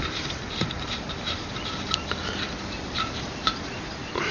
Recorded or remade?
remade